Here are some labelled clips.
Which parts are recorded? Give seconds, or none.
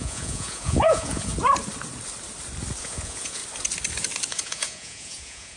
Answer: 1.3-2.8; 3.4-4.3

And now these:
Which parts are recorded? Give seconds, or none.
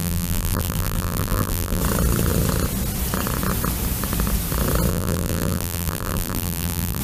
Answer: 1.8-4.9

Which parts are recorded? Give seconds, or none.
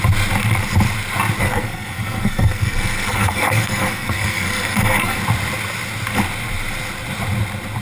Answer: 0.0-1.4; 5.2-7.8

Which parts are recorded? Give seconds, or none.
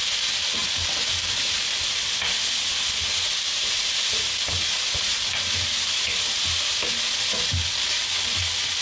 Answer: 0.0-8.8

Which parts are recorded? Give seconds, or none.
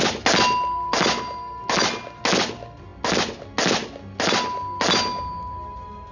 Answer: 0.0-6.1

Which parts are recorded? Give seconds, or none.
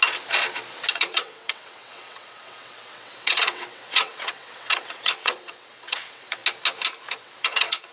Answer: 0.0-0.9; 6.4-7.2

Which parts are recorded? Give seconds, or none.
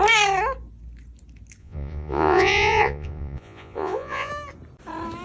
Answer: 0.0-1.6; 4.3-5.2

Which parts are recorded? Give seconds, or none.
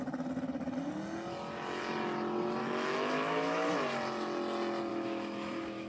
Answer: 0.0-2.6; 3.7-4.9